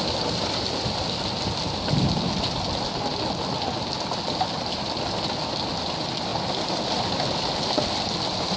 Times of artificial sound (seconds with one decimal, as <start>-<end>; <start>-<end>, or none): none